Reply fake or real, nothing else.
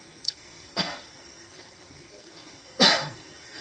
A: fake